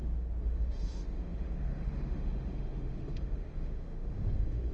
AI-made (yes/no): yes